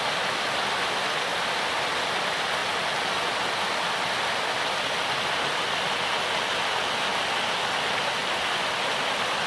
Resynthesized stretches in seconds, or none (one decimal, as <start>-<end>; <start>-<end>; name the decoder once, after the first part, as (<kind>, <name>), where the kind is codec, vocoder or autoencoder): none

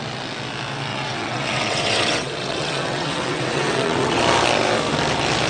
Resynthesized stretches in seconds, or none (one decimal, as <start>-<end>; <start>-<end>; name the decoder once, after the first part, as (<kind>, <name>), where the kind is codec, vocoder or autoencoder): 0.9-4.2 (vocoder, WaveNeXt)

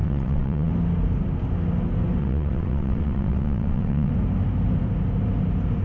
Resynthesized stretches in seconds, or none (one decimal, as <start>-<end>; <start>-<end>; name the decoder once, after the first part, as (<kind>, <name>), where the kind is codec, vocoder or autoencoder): 0.0-0.7 (vocoder, WaveNeXt); 2.2-4.1

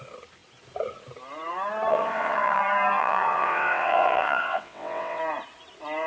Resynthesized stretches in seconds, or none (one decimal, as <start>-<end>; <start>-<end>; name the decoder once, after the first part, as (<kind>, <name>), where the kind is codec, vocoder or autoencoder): 1.9-2.6 (vocoder, WaveNeXt); 3.0-5.2

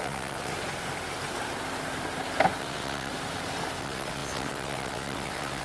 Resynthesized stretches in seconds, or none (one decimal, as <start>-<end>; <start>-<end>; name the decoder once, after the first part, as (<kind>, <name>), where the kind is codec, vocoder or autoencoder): 0.0-0.5 (vocoder, WaveNeXt); 2.6-3.1; 3.8-5.6

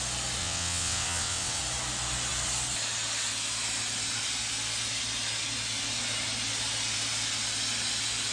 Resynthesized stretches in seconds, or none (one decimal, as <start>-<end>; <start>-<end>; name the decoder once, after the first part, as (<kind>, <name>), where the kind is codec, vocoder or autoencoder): 0.4-1.6 (vocoder, WaveNeXt)